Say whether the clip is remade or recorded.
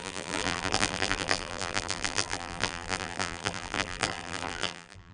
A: remade